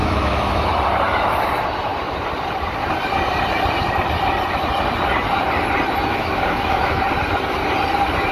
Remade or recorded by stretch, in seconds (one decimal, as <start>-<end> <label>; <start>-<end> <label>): 0.0-0.7 remade; 0.7-6.1 recorded; 6.1-7.0 remade; 7.0-8.3 recorded